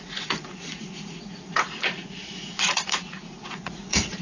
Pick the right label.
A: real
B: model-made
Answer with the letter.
B